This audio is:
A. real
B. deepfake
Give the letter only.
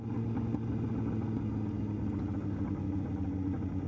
A